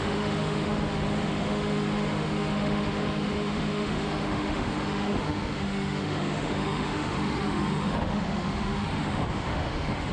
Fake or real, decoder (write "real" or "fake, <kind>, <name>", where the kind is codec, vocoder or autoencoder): fake, autoencoder, DAC-VAE